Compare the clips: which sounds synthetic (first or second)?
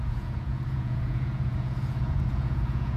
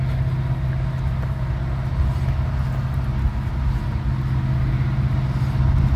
first